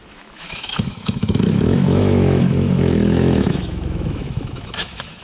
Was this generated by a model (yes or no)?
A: yes